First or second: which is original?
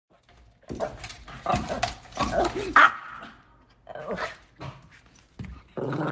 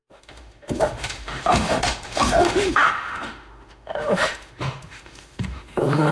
first